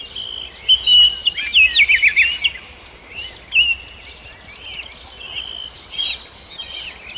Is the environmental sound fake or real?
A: real